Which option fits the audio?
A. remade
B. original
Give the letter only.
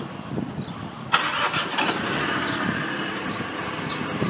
B